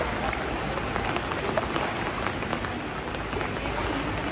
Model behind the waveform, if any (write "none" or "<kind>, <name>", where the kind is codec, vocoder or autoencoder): none